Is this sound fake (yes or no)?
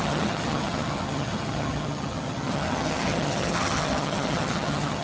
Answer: yes